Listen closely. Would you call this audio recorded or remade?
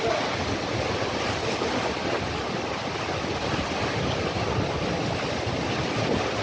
recorded